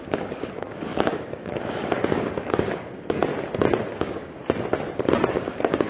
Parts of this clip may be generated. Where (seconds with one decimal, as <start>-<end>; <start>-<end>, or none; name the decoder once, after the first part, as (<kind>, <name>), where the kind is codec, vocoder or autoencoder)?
0.0-3.3 (codec, DAC); 4.0-4.4; 5.3-5.9